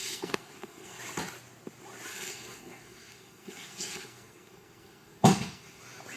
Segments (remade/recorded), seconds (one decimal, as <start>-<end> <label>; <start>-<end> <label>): 0.0-1.0 remade; 1.0-2.1 recorded; 2.1-5.8 remade; 5.8-6.2 recorded